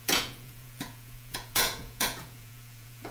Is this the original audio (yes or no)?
no